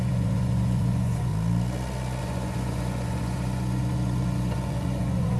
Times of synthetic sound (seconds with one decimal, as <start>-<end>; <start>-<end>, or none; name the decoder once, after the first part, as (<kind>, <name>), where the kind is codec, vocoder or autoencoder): 0.0-1.3 (vocoder, Vocos); 2.2-5.4